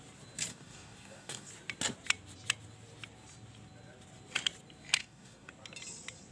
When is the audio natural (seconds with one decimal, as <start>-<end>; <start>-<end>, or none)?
0.0-0.5; 1.5-5.0; 5.5-6.3